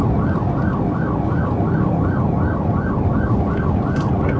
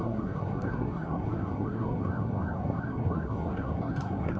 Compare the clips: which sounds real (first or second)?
first